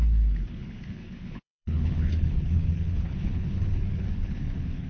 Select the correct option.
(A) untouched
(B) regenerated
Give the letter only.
B